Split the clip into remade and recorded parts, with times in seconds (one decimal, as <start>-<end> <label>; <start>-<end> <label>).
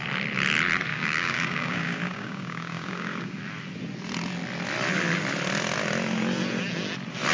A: 0.0-0.9 recorded; 0.9-3.4 remade; 3.4-7.3 recorded